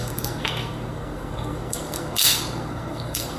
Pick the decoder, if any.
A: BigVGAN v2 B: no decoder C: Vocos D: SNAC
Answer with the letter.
D